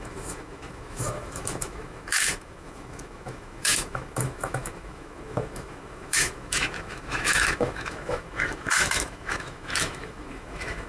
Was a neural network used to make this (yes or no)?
yes